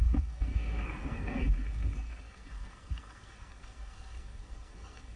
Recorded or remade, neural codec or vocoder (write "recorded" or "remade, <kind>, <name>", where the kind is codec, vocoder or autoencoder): remade, codec, SNAC